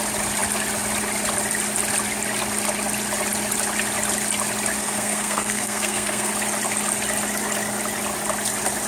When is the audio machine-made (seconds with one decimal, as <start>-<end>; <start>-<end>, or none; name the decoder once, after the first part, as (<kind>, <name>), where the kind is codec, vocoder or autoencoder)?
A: 4.8-6.3 (codec, SNAC)